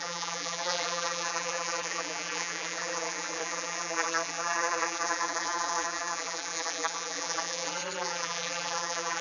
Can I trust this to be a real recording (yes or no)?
no